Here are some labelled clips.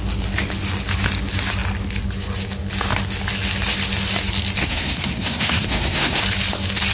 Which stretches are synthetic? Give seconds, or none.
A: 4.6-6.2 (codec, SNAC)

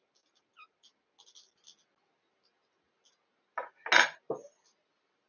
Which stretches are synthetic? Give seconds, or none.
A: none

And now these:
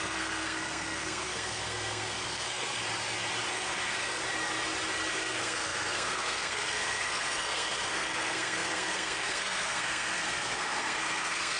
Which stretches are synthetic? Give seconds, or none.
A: 0.0-2.8 (codec, SNAC); 3.5-4.2; 5.1-11.6

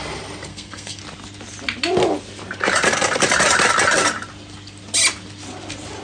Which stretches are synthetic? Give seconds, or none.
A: 0.5-1.0 (codec, SNAC)

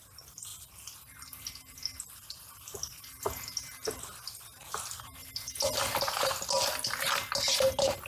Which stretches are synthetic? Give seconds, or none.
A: none

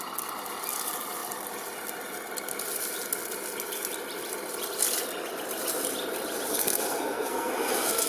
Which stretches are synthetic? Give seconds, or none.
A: 6.5-8.1 (codec, SNAC)

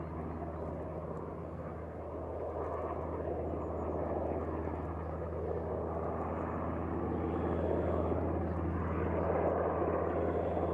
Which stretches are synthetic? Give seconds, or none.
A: 1.4-2.0 (codec, SNAC)

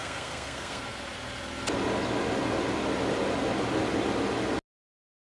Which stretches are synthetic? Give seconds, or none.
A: 0.0-0.8 (codec, SNAC)